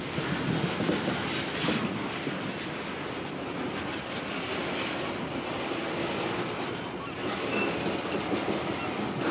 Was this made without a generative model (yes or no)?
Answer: yes